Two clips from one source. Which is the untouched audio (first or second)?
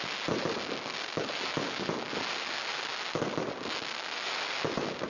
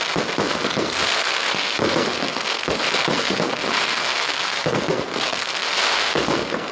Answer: first